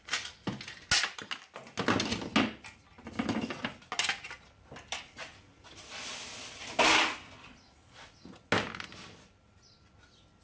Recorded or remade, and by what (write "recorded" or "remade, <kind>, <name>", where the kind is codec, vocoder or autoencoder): recorded